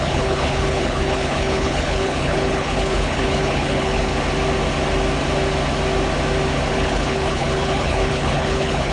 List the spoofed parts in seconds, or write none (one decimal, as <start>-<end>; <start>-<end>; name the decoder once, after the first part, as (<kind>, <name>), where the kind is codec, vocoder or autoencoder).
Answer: 0.0-4.1 (codec, HILCodec); 6.7-8.9